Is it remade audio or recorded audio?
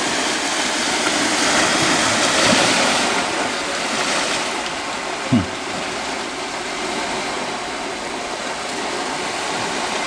recorded